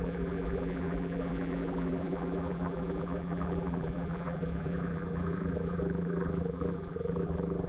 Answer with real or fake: fake